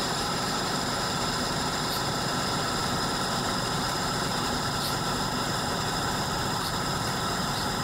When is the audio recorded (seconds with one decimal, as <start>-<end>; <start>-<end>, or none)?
0.0-7.8

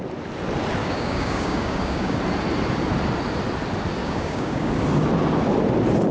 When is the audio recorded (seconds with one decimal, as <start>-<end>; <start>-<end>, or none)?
0.0-0.8; 2.2-4.0; 4.7-6.1

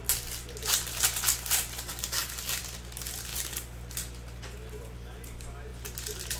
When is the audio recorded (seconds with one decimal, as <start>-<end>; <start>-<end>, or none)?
0.0-1.9; 2.6-6.4